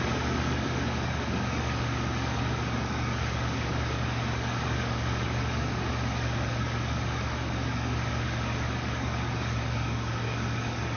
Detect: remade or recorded remade